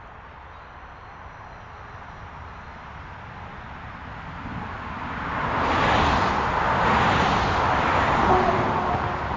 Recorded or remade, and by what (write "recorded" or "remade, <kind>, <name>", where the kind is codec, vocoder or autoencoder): recorded